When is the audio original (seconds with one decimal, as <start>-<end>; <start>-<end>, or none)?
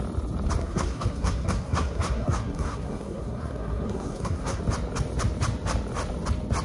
0.0-0.6; 4.6-6.6